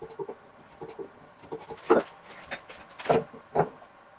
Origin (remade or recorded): recorded